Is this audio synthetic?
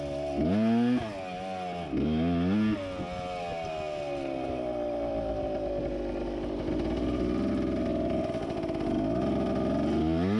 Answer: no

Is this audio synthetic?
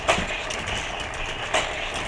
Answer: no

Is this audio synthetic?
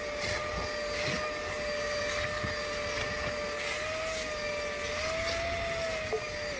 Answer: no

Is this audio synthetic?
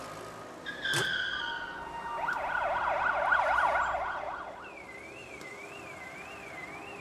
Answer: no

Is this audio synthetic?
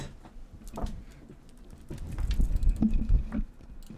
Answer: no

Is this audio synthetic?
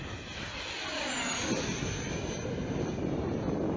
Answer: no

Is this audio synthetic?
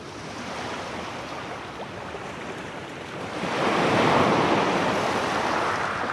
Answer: no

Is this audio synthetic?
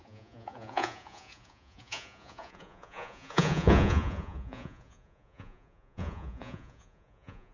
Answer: yes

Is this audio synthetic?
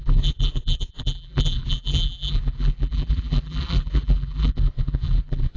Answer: yes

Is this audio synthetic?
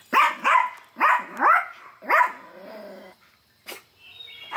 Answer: no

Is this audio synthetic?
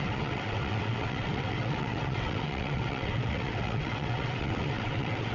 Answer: yes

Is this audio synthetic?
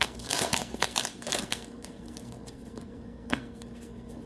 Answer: yes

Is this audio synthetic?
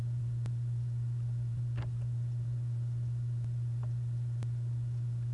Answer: yes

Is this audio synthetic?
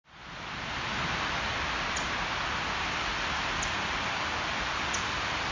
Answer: no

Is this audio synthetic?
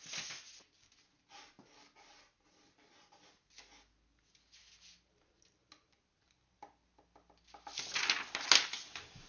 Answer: no